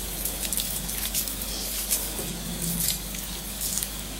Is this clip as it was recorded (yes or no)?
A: no